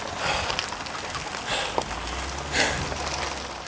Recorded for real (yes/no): yes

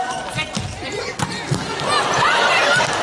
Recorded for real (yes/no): yes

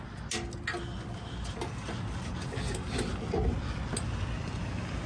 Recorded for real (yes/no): yes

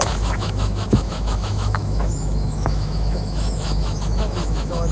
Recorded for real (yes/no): no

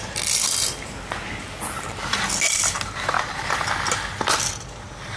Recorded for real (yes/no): yes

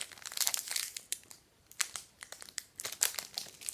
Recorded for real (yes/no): yes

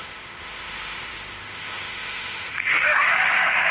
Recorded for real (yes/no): no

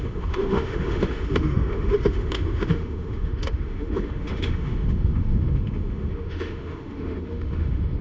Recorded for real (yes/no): no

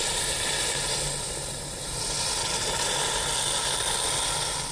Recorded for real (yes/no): yes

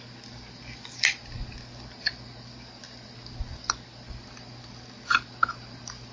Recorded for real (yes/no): yes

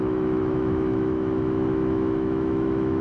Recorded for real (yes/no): no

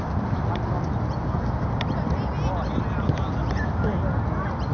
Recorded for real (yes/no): yes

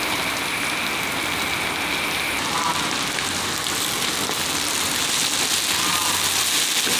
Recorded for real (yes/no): yes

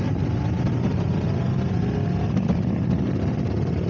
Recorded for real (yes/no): yes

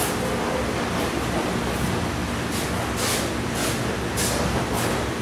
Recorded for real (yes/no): yes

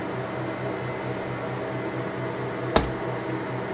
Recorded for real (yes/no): yes